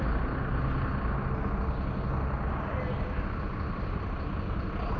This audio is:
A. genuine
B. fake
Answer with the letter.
A